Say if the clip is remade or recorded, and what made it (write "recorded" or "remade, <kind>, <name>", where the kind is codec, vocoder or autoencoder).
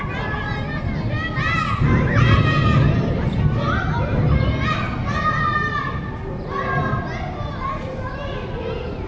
recorded